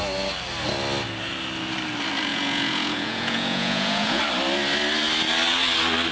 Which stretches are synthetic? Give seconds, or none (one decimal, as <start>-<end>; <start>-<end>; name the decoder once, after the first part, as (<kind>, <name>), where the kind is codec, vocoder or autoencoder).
2.3-4.2 (vocoder, Vocos)